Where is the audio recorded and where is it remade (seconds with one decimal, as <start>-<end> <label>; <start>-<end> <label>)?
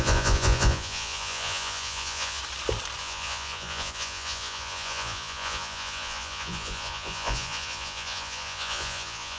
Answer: 0.0-2.4 remade; 2.4-3.0 recorded; 3.0-9.4 remade